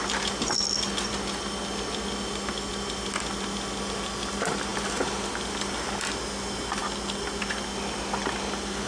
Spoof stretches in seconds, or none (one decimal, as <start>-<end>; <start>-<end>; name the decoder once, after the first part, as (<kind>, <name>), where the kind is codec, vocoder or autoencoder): 0.0-1.6 (vocoder, BigVGAN v2); 2.7-8.9